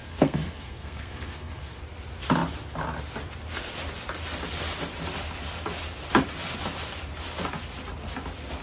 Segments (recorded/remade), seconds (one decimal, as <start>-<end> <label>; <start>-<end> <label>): 0.0-1.8 remade; 1.8-8.6 recorded